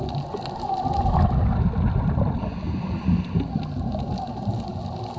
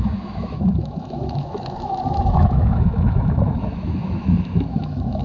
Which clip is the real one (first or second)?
first